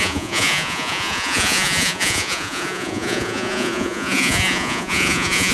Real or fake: fake